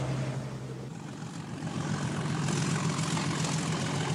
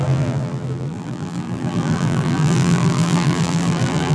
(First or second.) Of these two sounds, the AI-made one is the second